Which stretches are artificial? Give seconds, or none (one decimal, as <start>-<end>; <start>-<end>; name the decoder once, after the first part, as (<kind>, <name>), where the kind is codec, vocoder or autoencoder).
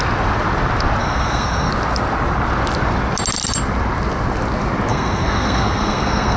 1.0-1.7 (codec, SNAC); 4.9-6.4